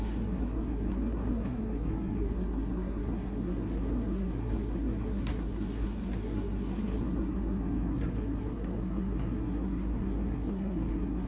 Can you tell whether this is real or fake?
fake